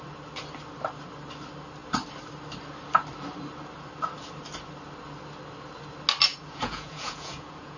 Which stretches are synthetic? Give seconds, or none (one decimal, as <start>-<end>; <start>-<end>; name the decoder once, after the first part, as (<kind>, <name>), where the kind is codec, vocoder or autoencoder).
6.3-7.8 (vocoder, Vocos)